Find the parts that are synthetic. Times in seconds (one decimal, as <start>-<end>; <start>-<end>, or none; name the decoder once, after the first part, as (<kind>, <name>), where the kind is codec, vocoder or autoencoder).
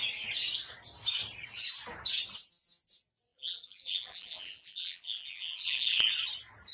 3.3-6.1 (vocoder, BigVGAN v2)